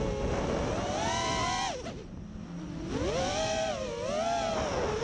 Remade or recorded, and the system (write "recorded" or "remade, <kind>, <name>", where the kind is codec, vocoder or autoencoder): recorded